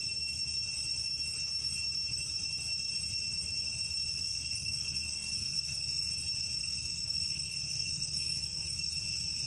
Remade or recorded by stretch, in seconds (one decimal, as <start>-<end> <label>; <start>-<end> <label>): 0.0-4.2 recorded; 4.2-6.1 remade; 6.1-6.6 recorded; 6.6-9.0 remade; 9.0-9.5 recorded